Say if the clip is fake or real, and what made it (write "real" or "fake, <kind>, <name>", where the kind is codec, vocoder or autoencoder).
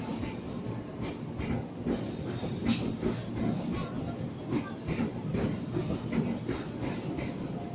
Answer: real